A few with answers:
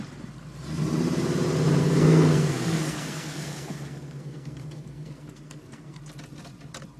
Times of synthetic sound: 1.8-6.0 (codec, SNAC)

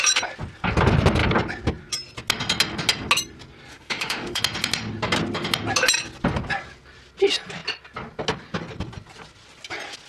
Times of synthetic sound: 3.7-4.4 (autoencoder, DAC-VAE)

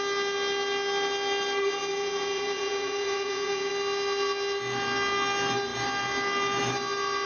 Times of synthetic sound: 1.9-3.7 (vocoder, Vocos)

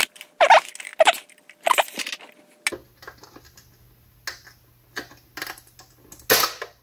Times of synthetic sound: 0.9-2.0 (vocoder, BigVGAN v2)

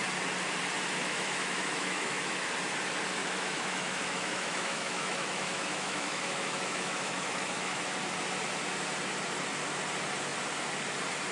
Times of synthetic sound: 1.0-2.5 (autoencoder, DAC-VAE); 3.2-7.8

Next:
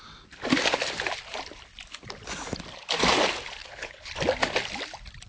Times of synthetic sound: 3.6-4.1 (codec, HILCodec)